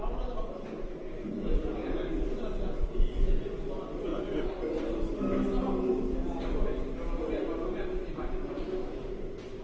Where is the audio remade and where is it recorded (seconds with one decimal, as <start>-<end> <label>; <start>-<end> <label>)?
0.0-9.6 recorded